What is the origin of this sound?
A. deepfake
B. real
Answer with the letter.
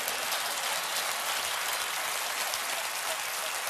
B